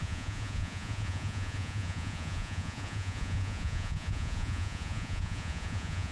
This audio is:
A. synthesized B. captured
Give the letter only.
A